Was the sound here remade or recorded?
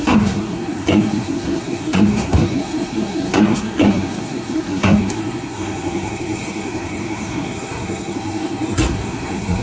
remade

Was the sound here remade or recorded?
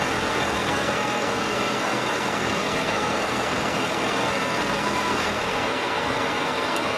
remade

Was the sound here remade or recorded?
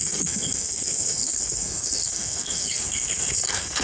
remade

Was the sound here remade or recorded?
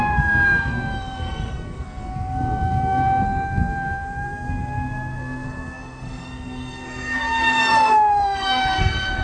remade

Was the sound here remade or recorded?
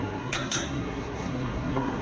remade